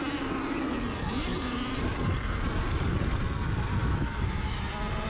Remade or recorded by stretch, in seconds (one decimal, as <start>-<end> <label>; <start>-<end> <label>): 0.0-3.8 recorded; 3.8-4.6 remade; 4.6-5.1 recorded